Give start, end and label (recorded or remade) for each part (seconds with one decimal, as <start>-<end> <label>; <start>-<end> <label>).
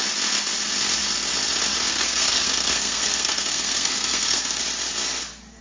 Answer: 0.0-1.9 recorded; 1.9-4.6 remade; 4.6-5.6 recorded